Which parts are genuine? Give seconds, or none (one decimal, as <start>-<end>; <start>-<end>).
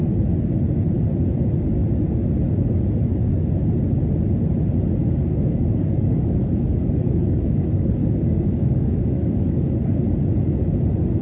0.0-5.0; 10.0-11.2